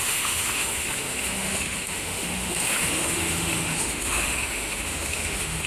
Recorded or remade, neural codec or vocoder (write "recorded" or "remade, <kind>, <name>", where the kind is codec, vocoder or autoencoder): remade, autoencoder, DAC-VAE